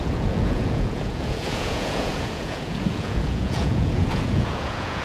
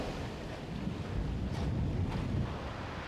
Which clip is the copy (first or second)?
first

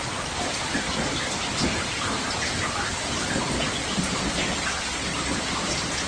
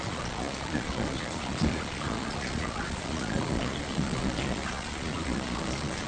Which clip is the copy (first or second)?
second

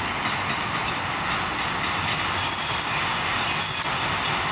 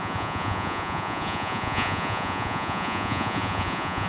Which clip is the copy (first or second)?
second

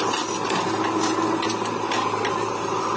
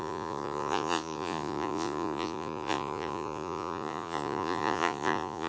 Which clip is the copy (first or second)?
second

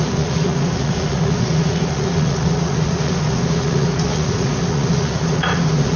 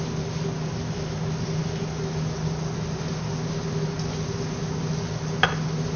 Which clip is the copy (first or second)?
first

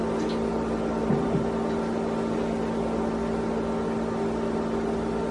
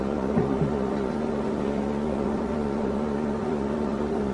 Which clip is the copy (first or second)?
second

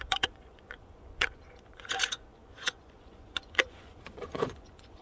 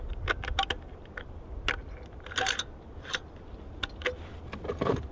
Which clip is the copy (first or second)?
first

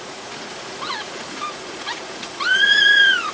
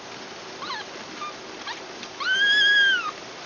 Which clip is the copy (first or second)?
first